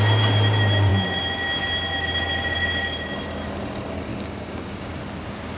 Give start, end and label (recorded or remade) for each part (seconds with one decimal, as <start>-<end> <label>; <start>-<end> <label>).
0.0-4.1 recorded; 4.1-5.0 remade; 5.0-5.6 recorded